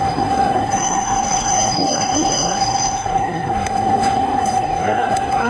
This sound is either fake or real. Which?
fake